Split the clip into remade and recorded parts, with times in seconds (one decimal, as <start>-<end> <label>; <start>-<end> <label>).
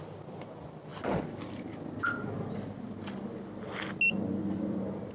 0.0-5.1 recorded